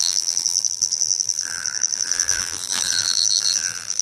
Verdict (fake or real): fake